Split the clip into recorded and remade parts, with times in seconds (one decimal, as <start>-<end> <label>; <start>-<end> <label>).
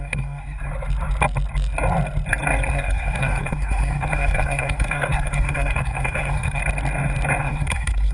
0.0-0.7 remade; 0.7-2.7 recorded; 2.7-6.6 remade; 6.6-7.4 recorded; 7.4-8.1 remade